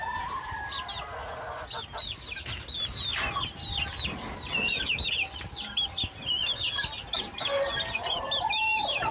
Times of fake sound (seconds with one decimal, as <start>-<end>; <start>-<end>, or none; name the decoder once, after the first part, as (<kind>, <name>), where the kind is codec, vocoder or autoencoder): none